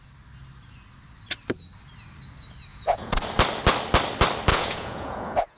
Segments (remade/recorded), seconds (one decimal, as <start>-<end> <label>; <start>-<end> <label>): 0.0-2.7 recorded; 2.7-3.2 remade; 3.2-4.5 recorded; 4.5-5.6 remade